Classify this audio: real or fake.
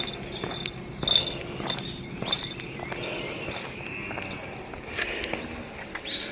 real